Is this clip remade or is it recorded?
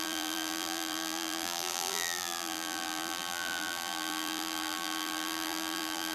remade